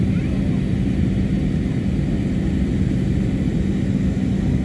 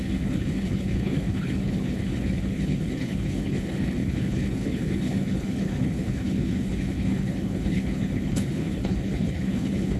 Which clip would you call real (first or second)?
first